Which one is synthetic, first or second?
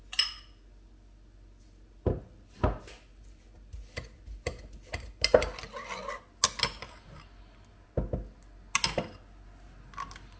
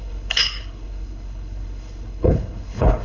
second